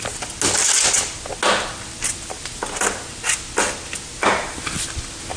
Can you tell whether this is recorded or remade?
recorded